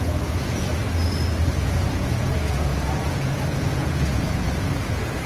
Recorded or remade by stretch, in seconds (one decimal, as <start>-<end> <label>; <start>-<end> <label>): 0.0-0.7 remade; 0.7-1.5 recorded; 1.5-5.3 remade